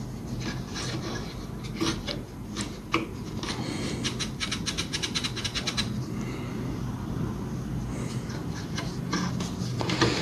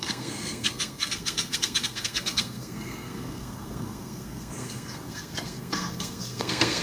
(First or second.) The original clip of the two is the first